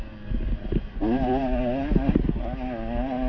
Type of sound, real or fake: real